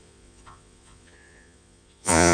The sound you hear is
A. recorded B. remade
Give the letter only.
B